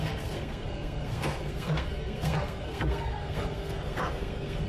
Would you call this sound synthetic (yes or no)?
yes